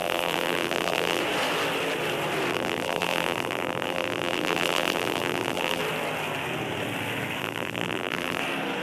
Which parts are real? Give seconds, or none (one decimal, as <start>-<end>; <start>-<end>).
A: 1.2-2.5; 5.8-7.4; 8.4-8.8